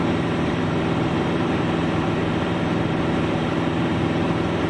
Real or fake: fake